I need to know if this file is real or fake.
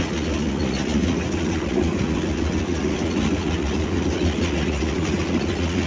fake